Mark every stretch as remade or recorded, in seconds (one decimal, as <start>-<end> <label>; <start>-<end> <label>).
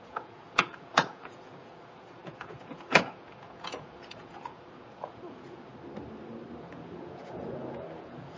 0.0-5.7 remade; 5.7-6.6 recorded; 6.6-8.4 remade